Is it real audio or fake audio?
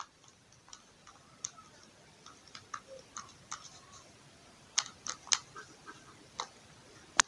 real